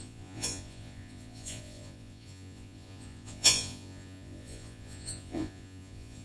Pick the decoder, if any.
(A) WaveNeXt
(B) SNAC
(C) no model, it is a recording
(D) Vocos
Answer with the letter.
D